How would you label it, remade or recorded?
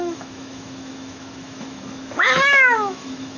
remade